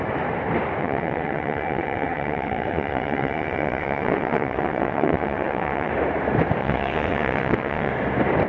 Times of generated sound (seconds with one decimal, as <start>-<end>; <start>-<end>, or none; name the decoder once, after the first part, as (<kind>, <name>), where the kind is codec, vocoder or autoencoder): 0.8-5.9 (vocoder, WaveNeXt); 6.6-7.9